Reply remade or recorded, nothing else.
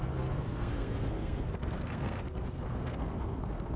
remade